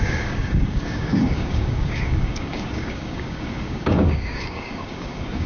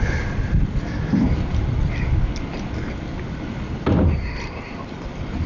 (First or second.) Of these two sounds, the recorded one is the second